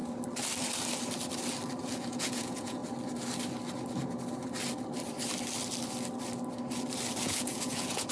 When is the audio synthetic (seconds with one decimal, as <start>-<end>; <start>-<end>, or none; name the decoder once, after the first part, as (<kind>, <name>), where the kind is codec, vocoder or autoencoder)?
1.8-2.8 (vocoder, Vocos); 7.2-8.1